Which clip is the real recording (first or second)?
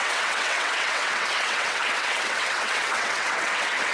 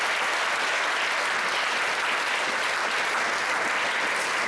second